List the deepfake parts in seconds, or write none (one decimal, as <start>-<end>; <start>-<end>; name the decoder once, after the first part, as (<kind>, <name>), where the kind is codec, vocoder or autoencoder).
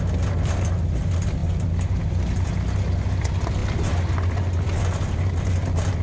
none